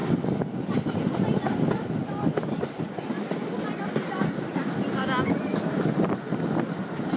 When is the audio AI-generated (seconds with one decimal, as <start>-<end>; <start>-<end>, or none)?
none